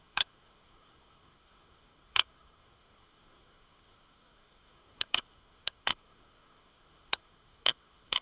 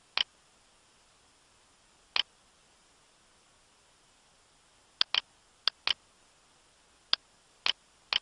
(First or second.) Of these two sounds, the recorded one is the second